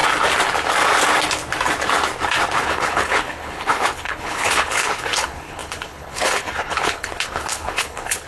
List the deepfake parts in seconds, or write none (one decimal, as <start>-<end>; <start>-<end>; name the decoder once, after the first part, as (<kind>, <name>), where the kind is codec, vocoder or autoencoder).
2.6-8.3 (codec, HILCodec)